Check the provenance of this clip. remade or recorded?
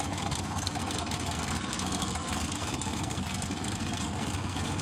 remade